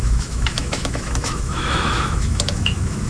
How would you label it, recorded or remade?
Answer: remade